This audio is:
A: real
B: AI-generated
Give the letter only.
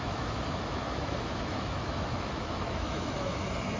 B